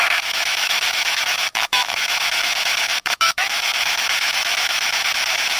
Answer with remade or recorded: remade